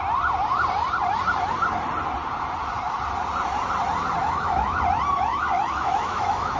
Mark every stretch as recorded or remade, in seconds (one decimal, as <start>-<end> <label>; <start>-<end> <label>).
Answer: 0.0-4.2 recorded; 4.2-4.8 remade; 4.8-5.3 recorded; 5.3-6.6 remade